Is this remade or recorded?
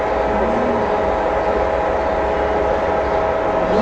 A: recorded